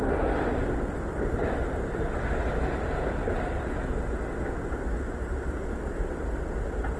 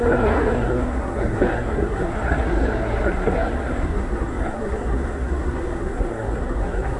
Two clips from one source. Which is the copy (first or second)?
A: second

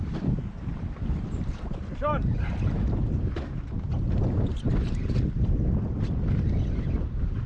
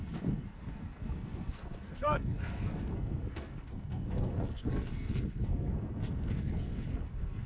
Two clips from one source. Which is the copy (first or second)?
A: second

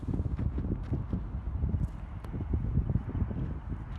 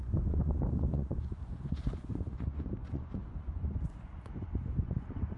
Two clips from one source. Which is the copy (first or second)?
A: second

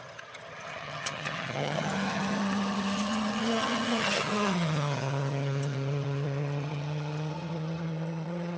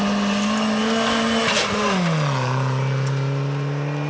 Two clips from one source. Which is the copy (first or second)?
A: first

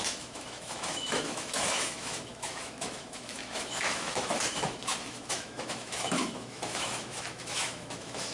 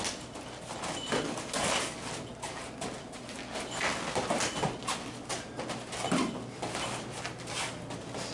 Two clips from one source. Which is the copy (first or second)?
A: first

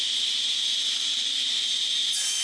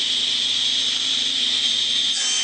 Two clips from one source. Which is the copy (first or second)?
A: first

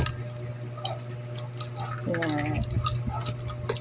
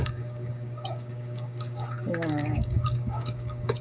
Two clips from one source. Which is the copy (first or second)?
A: second